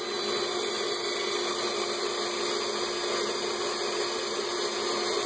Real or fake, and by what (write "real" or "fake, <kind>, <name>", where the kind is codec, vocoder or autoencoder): real